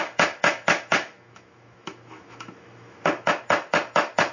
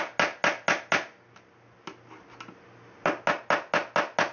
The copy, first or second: first